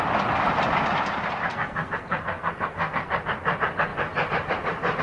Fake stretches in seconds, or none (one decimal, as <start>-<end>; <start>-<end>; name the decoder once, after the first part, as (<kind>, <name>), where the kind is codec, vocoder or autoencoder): 1.5-3.1 (codec, SNAC)